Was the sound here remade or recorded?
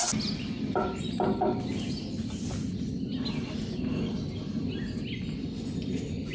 recorded